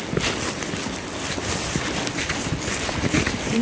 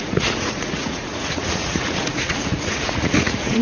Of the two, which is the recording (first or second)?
first